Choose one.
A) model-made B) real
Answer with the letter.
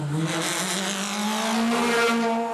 B